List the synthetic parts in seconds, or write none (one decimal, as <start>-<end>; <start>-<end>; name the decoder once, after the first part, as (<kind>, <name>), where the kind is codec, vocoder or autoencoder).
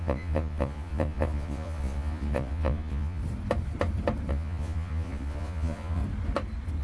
0.0-3.2 (vocoder, Vocos); 4.3-6.0